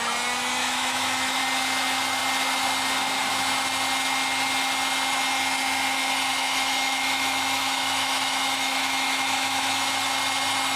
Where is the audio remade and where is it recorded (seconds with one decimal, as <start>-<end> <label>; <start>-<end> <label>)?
0.0-0.6 recorded; 0.6-1.4 remade; 1.4-6.3 recorded; 6.3-9.8 remade; 9.8-10.8 recorded